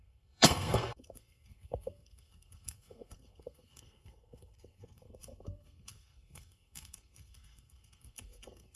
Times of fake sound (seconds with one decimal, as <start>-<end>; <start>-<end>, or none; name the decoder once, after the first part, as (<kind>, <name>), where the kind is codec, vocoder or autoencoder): 0.0-8.8 (codec, SNAC)